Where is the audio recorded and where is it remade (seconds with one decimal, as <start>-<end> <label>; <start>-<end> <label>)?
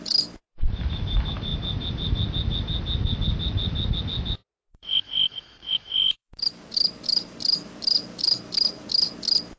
0.0-4.7 recorded; 4.7-6.4 remade; 6.4-9.6 recorded